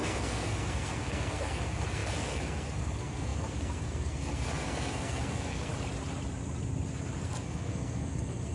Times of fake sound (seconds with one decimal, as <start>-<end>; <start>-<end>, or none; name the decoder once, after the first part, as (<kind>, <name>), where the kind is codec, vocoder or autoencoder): 0.0-5.7 (codec, SNAC); 7.2-8.5